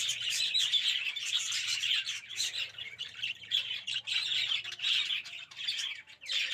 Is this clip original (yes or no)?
no